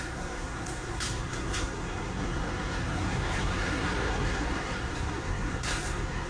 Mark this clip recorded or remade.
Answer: remade